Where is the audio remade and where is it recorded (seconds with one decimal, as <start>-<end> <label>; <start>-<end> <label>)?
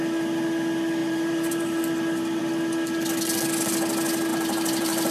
0.0-1.0 recorded; 1.0-1.8 remade; 1.8-4.3 recorded; 4.3-5.1 remade